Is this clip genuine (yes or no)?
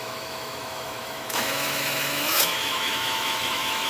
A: no